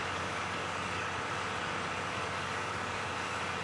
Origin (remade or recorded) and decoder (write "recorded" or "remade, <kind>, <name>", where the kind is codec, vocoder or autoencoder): remade, codec, DAC